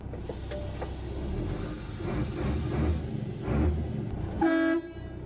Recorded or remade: recorded